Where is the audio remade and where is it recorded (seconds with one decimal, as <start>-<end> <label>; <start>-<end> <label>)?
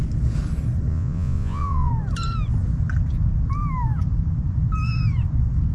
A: 0.0-0.9 recorded; 0.9-1.9 remade; 1.9-5.7 recorded